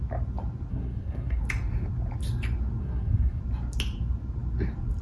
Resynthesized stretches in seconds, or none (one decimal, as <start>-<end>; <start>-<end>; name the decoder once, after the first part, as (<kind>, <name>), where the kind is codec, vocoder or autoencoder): 0.7-1.4 (codec, SNAC); 2.8-3.4